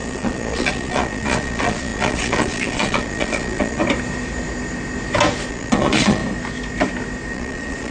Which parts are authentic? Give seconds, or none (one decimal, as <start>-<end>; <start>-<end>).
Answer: 3.8-5.5; 6.2-7.3